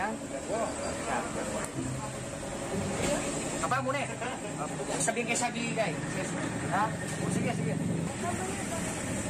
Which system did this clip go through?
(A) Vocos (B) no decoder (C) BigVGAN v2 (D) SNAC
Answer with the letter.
B